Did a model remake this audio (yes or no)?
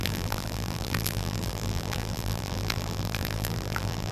yes